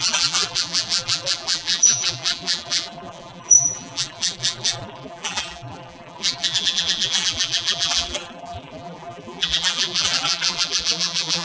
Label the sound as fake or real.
fake